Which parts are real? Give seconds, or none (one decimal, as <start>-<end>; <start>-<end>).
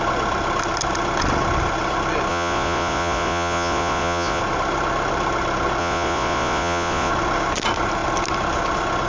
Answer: 0.0-2.3; 4.4-5.8; 7.1-9.1